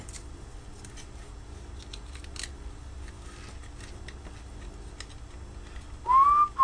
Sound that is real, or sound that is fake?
real